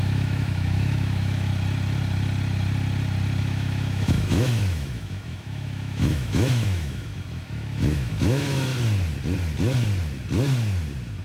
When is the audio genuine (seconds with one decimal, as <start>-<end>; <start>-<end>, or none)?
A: 1.5-3.4; 8.7-11.2